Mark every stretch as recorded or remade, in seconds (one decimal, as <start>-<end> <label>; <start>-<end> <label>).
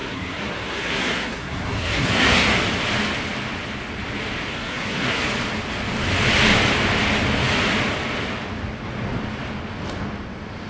0.0-2.6 remade; 2.6-4.5 recorded; 4.5-5.2 remade; 5.2-10.7 recorded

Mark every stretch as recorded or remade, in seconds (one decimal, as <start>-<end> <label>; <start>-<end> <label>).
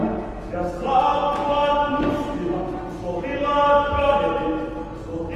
0.0-5.4 recorded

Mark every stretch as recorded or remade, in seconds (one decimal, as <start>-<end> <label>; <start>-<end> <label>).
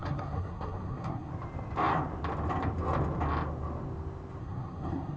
0.0-1.3 remade; 1.3-4.4 recorded; 4.4-5.2 remade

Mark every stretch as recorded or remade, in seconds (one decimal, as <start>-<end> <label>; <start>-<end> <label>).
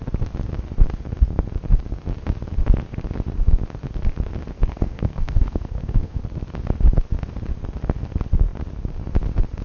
0.0-4.5 recorded; 4.5-6.2 remade; 6.2-9.6 recorded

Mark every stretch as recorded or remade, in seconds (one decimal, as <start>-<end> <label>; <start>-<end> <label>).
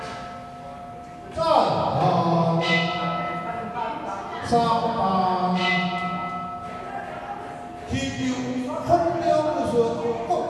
0.0-10.5 recorded